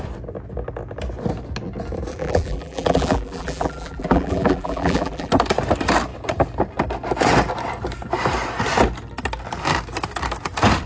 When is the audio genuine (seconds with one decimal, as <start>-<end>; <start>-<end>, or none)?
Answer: 0.0-2.1; 5.3-10.9